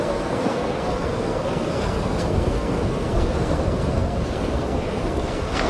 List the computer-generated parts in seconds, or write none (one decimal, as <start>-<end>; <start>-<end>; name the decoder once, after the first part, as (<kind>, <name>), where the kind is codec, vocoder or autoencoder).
0.0-5.7 (codec, SNAC)